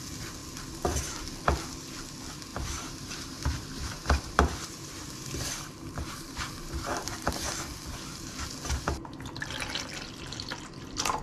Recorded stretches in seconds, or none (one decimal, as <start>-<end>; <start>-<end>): 0.0-2.5; 7.3-11.2